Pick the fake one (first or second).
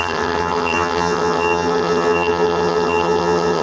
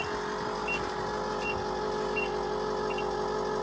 first